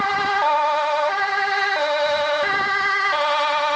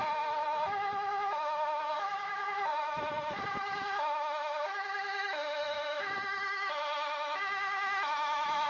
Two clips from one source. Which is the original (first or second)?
first